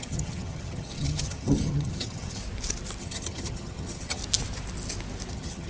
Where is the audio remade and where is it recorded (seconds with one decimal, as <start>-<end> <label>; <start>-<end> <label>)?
0.0-2.4 remade; 2.4-3.0 recorded; 3.0-4.2 remade; 4.2-5.3 recorded; 5.3-5.7 remade